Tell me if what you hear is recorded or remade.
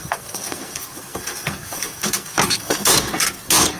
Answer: remade